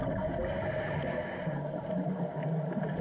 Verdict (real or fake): real